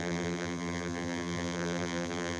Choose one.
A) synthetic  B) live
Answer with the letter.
A